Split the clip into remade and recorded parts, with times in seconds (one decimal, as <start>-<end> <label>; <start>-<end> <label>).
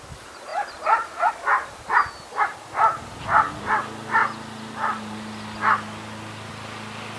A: 0.0-2.9 recorded; 2.9-3.7 remade; 3.7-7.2 recorded